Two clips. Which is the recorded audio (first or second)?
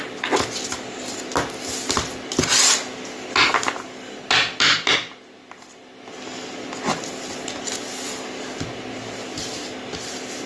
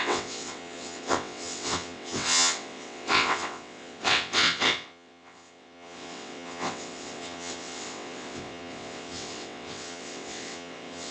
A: first